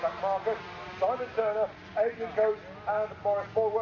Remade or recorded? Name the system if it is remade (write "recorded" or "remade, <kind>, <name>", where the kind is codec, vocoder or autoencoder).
recorded